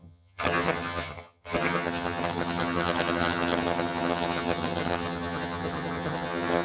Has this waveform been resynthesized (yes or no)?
yes